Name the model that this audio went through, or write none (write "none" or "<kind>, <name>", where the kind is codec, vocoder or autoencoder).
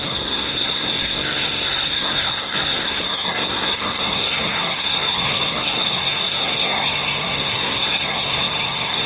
codec, SNAC